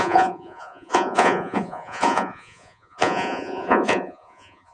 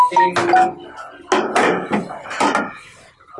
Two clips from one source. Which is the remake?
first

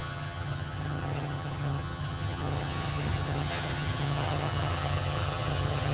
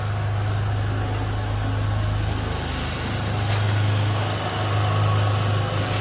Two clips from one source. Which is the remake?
first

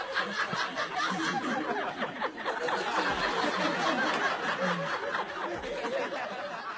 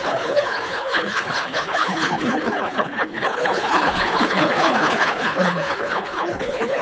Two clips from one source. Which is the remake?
second